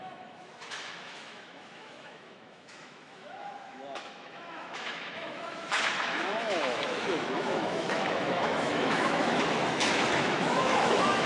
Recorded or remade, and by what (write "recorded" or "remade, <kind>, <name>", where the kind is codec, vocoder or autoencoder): remade, autoencoder, DAC-VAE